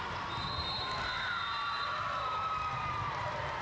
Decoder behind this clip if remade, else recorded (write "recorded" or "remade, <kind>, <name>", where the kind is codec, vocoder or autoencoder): remade, vocoder, BigVGAN v2